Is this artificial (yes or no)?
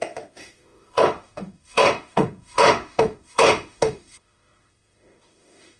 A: yes